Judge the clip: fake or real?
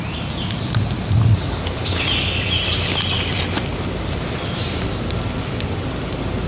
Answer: real